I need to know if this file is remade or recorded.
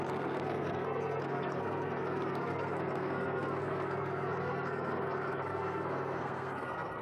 remade